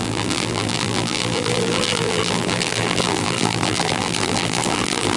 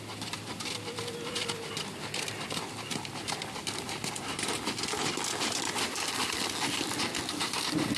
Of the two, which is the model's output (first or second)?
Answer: first